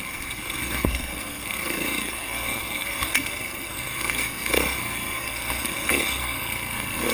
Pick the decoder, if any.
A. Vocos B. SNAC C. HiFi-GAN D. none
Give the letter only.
B